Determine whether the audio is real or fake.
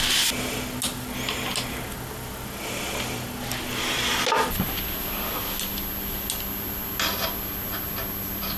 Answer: real